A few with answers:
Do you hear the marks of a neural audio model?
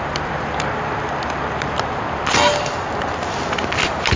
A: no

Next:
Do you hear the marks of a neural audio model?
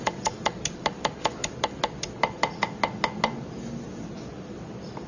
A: no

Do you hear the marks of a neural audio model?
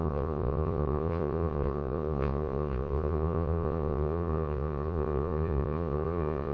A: yes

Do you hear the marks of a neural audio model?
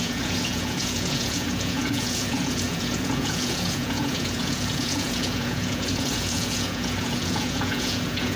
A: yes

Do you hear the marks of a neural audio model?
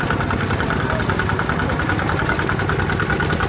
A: no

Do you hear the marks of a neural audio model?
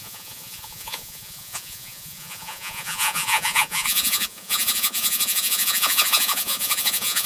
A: yes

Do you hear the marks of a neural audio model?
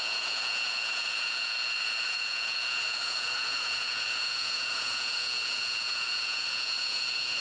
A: yes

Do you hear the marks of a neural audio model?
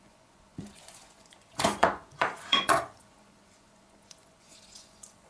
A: yes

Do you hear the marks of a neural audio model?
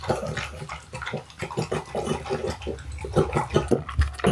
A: no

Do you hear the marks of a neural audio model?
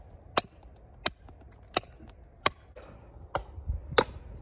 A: no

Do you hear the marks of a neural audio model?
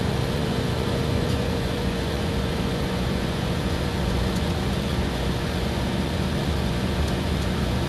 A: yes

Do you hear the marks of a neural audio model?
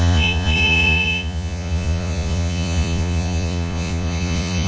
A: yes